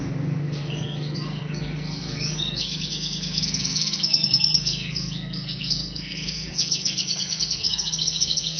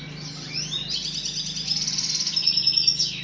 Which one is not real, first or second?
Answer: first